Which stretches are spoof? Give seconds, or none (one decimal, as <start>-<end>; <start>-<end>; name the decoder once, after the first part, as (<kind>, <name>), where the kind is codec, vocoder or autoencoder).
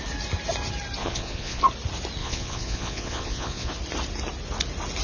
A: 1.0-1.6 (vocoder, Vocos); 2.2-3.7